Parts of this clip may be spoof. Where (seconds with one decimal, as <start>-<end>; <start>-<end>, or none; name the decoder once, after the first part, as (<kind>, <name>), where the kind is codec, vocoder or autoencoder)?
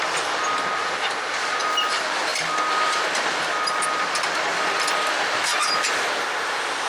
none